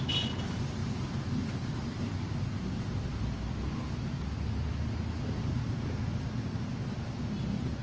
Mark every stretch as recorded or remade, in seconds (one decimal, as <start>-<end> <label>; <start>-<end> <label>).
0.0-7.8 recorded